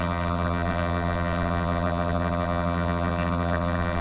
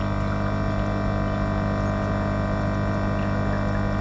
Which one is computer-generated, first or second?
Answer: first